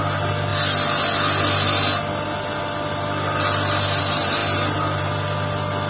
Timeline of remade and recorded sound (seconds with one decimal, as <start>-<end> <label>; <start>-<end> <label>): 0.0-5.9 recorded